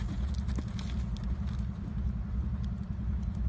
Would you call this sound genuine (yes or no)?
yes